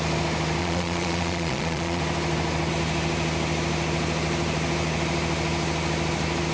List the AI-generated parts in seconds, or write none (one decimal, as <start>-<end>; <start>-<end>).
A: 0.6-2.0